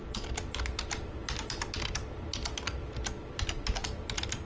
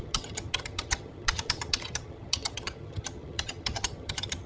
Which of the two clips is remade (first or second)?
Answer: second